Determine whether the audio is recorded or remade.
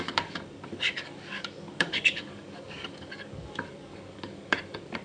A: remade